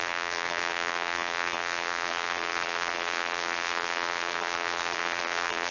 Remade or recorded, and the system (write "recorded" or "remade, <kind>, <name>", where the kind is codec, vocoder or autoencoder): remade, vocoder, BigVGAN v2